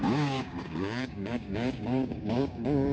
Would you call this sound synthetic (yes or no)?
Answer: yes